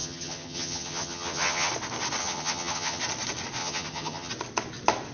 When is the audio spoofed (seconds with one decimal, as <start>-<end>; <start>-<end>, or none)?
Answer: 0.0-1.7; 2.2-3.0; 3.6-4.3